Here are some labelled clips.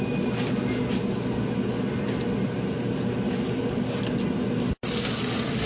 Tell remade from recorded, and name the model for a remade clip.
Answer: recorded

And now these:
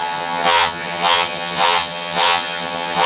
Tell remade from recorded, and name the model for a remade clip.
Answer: remade, vocoder, HiFi-GAN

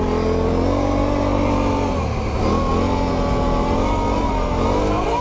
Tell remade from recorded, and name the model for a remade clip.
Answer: recorded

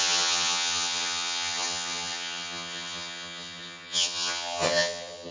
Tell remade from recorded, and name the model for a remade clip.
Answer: remade, vocoder, HiFi-GAN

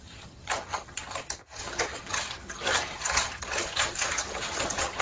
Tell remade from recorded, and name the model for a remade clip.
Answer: remade, vocoder, HiFi-GAN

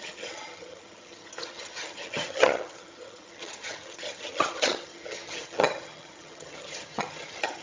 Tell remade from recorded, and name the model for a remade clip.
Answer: remade, vocoder, HiFi-GAN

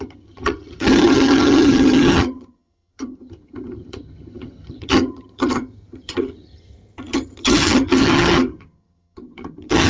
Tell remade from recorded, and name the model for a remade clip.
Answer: remade, vocoder, HiFi-GAN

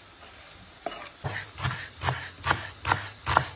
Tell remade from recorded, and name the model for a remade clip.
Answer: recorded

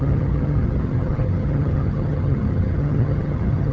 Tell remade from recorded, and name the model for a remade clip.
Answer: remade, vocoder, HiFi-GAN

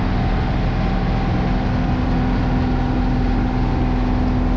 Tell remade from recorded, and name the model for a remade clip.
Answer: recorded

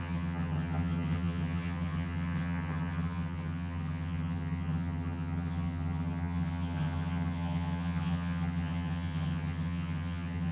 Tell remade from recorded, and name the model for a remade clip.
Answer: remade, vocoder, HiFi-GAN